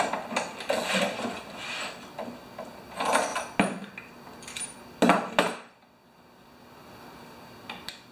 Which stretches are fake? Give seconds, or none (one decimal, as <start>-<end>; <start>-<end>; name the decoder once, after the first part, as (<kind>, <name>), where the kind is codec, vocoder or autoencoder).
none

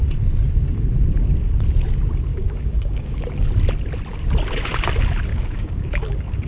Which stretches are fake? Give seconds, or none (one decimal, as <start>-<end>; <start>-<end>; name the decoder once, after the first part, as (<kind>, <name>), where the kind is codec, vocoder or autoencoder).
2.3-3.2 (codec, DAC); 5.3-6.5

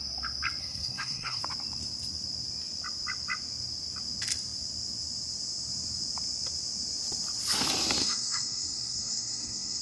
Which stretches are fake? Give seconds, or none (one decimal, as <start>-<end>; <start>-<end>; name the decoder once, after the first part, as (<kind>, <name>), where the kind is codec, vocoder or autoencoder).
0.6-1.4 (codec, SNAC); 8.0-9.8

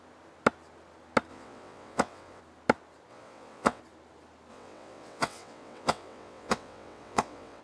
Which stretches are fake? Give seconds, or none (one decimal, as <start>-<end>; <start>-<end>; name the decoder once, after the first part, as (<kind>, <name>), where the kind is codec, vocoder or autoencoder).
1.3-2.4 (vocoder, WaveNeXt); 3.1-3.8; 4.5-7.6

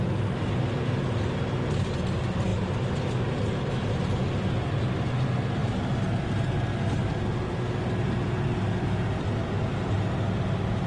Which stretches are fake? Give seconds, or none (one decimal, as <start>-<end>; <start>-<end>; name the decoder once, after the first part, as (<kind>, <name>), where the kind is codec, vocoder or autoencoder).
none